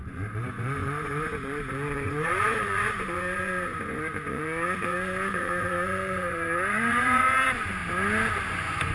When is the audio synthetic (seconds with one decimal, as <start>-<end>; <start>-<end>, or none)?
0.0-7.8; 8.5-8.9